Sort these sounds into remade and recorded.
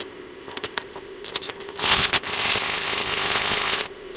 remade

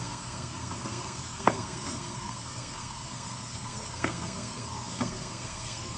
remade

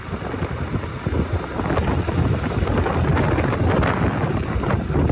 recorded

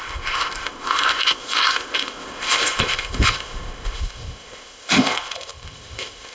remade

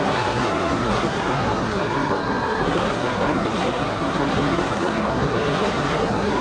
remade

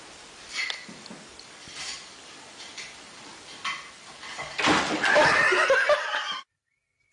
recorded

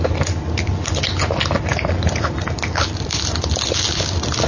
recorded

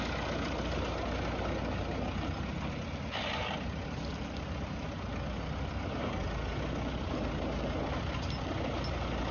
recorded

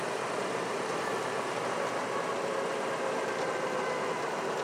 recorded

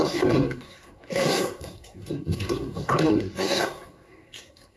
remade